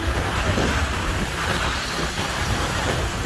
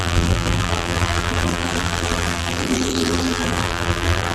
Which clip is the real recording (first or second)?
first